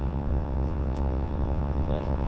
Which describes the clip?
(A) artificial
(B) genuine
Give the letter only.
A